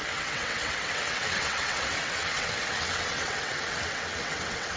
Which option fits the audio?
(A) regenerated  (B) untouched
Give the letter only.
A